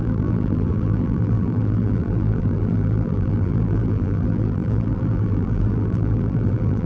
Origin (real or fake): fake